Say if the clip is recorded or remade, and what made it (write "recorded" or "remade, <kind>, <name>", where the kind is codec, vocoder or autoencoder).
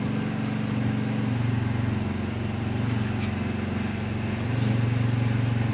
recorded